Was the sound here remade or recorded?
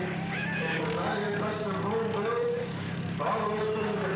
remade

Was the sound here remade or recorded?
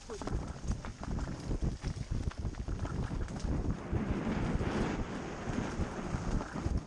recorded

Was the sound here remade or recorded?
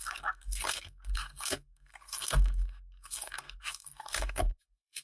remade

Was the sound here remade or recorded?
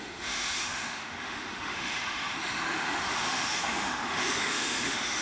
remade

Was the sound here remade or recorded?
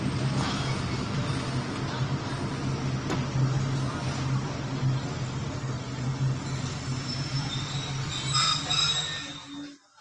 recorded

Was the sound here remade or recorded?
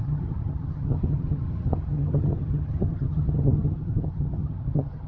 remade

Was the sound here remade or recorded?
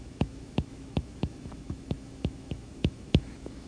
remade